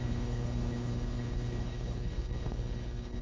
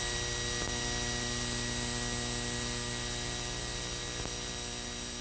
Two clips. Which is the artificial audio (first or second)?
first